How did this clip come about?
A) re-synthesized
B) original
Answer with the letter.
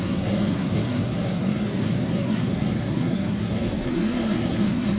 A